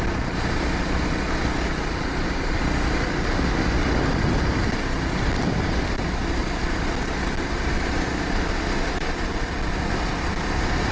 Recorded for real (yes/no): yes